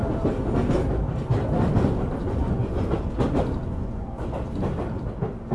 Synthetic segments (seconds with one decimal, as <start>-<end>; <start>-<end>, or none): 2.2-3.0; 3.6-4.3